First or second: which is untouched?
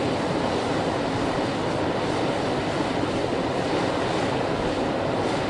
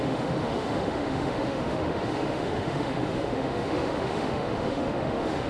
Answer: first